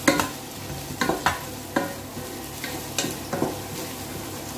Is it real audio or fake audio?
real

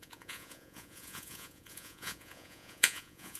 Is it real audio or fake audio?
fake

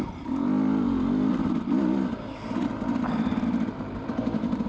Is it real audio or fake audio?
fake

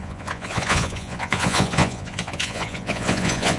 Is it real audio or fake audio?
fake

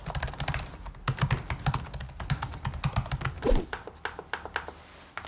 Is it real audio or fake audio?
real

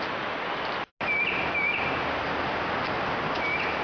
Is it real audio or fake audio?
real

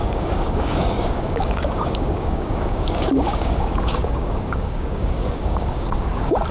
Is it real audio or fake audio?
fake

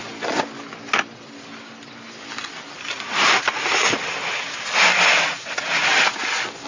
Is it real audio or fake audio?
real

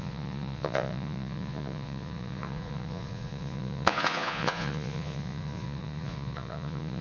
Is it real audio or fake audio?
fake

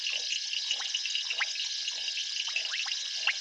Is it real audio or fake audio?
real